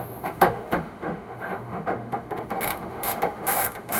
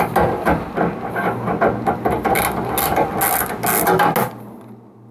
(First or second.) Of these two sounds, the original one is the second